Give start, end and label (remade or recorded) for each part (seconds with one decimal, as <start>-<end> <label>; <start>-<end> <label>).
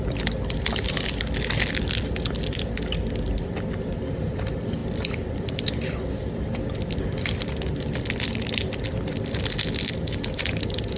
0.0-4.8 recorded; 4.8-9.1 remade; 9.1-11.0 recorded